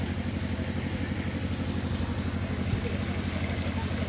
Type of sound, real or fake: real